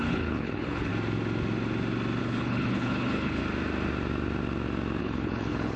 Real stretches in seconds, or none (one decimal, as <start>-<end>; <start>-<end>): 0.9-2.2; 3.4-5.0